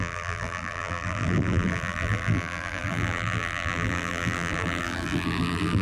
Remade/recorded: remade